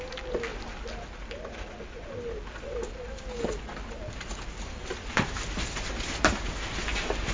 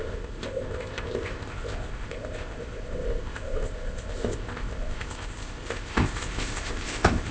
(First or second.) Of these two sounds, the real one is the first